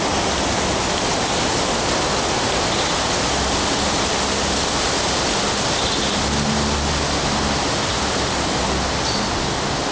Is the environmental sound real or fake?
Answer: real